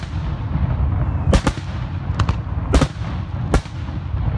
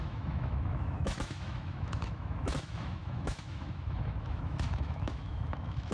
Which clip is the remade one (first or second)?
second